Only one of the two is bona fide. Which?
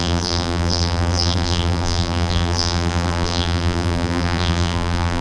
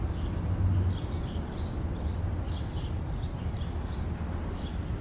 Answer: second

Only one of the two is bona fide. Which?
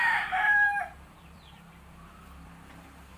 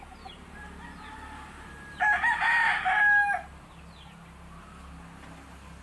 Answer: second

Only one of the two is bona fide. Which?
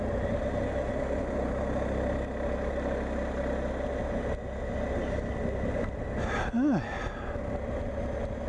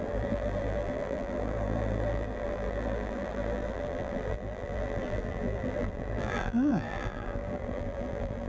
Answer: first